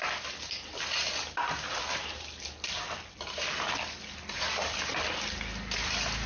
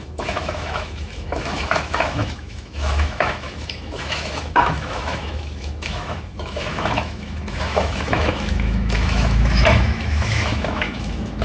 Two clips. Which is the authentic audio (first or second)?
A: first